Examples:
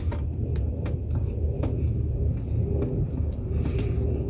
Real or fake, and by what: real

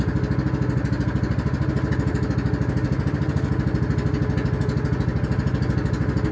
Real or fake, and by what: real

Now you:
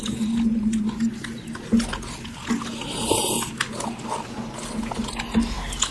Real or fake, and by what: real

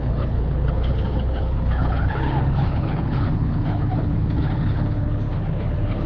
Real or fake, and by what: fake, codec, HILCodec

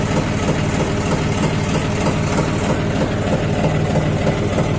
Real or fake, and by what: real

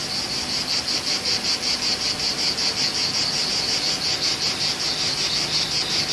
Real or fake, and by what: real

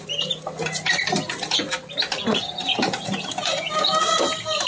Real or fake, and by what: real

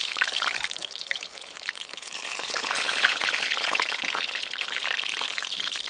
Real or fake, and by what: fake, codec, HILCodec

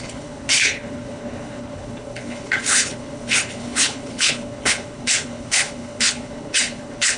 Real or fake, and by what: fake, codec, HILCodec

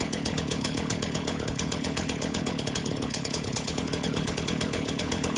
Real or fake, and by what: fake, codec, HILCodec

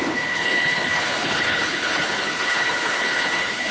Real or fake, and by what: fake, codec, HILCodec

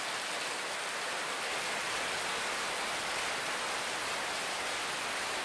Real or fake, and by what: real